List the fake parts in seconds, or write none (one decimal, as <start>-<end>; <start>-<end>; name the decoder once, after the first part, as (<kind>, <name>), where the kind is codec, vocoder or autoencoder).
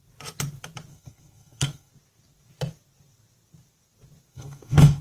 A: 0.9-1.9 (codec, SNAC); 4.3-5.0